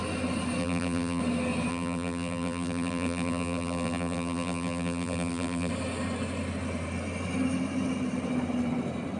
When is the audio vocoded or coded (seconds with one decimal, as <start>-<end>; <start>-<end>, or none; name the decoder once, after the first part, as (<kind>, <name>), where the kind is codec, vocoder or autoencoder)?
0.6-1.2 (vocoder, BigVGAN v2); 1.7-5.7